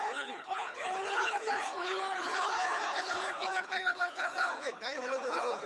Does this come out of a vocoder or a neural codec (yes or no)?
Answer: yes